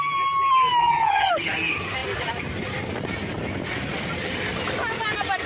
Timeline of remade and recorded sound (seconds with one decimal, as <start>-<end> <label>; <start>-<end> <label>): 0.0-0.8 recorded; 0.8-1.3 remade; 1.3-5.5 recorded